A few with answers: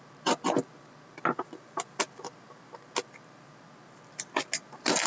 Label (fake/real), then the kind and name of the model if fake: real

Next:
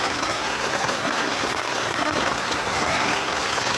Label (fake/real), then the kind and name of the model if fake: fake, codec, SNAC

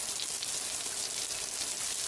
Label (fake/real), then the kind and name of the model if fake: real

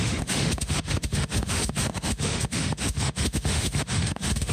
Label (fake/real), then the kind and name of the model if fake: fake, autoencoder, DAC-VAE